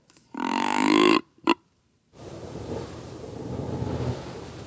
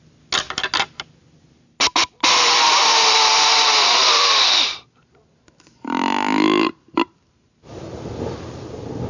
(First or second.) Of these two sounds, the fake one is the first